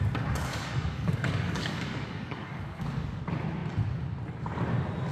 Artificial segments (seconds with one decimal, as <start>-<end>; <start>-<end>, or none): 0.5-3.2